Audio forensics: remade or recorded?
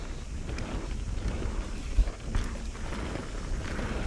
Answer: recorded